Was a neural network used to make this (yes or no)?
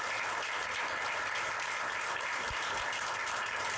no